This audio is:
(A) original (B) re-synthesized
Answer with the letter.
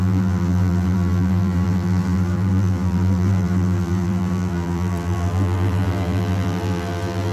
B